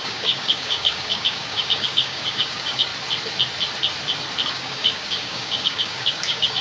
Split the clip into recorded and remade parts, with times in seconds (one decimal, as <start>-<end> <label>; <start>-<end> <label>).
0.0-2.9 remade; 2.9-4.5 recorded; 4.5-6.6 remade